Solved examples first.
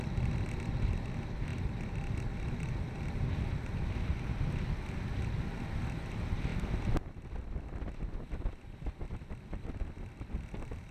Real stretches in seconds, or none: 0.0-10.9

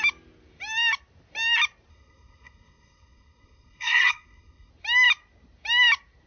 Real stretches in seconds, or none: 0.0-1.9; 4.7-6.3

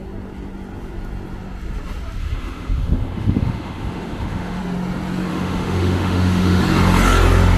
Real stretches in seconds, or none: 0.0-2.2; 4.6-5.3; 6.6-7.6

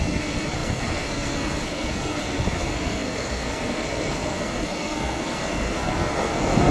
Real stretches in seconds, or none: none